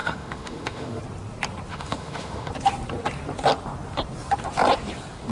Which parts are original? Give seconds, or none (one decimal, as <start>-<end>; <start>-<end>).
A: 1.0-1.7; 2.5-5.3